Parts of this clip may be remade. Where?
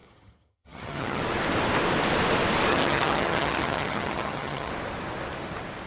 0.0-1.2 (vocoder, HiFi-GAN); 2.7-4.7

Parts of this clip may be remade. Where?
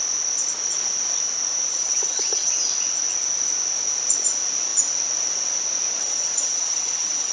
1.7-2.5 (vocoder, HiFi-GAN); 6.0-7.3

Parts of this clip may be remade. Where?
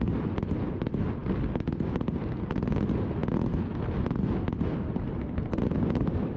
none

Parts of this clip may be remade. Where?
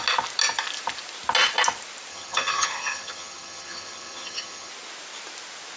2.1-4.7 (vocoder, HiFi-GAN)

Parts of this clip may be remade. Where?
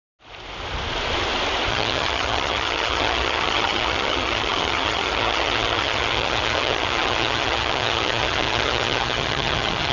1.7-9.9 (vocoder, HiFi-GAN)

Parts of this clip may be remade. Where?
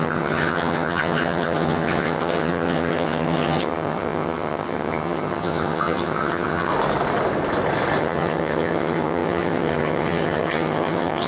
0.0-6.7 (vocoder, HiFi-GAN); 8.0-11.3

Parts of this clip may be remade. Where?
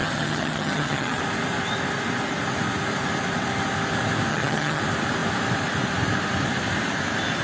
0.0-1.2 (vocoder, HiFi-GAN); 4.3-4.8